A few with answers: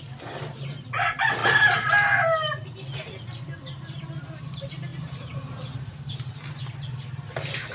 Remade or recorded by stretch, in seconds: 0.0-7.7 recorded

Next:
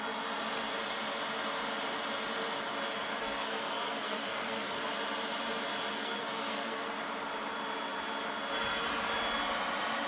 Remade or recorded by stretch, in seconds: 0.0-3.2 recorded; 3.2-4.9 remade; 4.9-5.9 recorded; 5.9-6.9 remade; 6.9-10.1 recorded

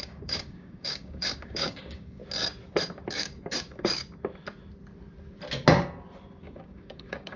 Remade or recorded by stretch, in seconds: 0.0-2.2 remade; 2.2-3.1 recorded; 3.1-4.0 remade; 4.0-6.4 recorded; 6.4-7.4 remade

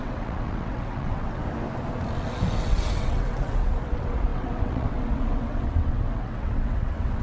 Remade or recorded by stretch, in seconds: 0.0-1.4 remade; 1.4-2.6 recorded; 2.6-7.2 remade

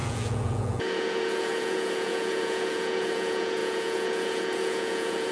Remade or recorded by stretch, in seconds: 0.0-5.3 remade